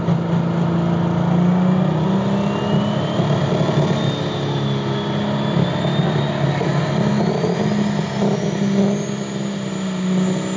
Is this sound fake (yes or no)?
no